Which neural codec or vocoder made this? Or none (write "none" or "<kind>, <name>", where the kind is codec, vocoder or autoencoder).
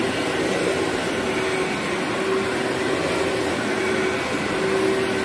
none